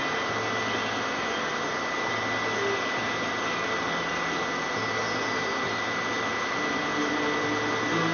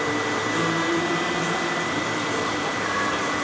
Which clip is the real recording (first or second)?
first